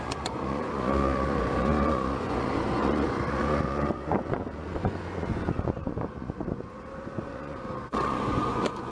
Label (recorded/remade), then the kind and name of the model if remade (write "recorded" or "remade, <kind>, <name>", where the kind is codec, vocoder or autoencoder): remade, vocoder, Vocos